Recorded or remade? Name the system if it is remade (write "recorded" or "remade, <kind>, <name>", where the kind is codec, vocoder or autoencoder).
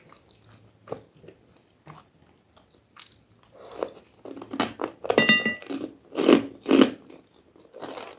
recorded